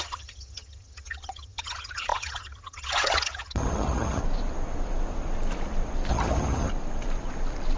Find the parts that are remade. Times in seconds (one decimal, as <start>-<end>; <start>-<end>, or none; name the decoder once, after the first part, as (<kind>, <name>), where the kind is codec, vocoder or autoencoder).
0.0-4.2 (vocoder, HiFi-GAN); 6.1-6.7